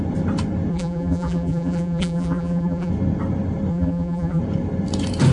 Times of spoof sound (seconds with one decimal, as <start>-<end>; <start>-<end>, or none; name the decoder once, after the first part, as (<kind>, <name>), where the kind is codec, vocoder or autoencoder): 0.7-2.9 (vocoder, BigVGAN v2); 3.7-4.4